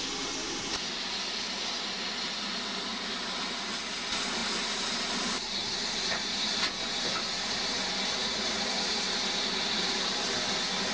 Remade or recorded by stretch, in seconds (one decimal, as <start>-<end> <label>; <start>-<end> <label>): 0.0-8.2 recorded; 8.2-9.0 remade; 9.0-10.9 recorded